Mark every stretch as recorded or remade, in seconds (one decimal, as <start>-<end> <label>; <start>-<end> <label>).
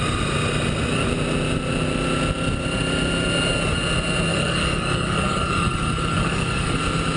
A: 0.0-4.3 recorded; 4.3-6.8 remade; 6.8-7.2 recorded